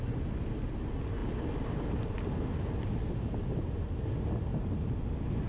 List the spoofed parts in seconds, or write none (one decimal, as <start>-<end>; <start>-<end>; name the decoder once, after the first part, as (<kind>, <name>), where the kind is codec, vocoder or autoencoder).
1.2-4.0 (vocoder, BigVGAN v2); 4.5-5.1